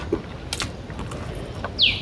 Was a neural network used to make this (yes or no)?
no